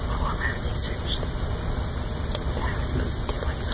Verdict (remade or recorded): recorded